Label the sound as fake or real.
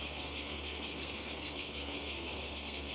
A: fake